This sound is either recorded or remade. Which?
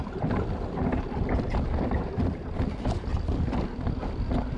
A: recorded